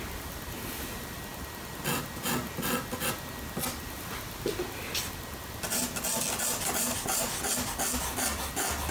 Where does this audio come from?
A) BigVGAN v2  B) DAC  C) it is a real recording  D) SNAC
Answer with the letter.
C